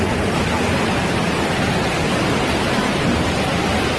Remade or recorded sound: recorded